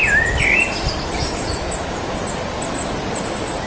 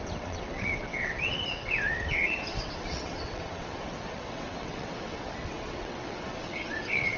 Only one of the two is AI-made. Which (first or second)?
second